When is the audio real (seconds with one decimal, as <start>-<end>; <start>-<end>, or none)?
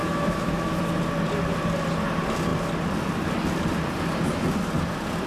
0.8-5.3